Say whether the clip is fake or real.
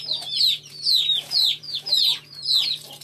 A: fake